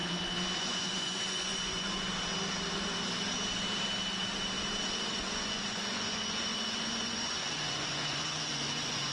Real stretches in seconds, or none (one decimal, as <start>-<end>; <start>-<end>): 0.0-0.6; 2.1-5.1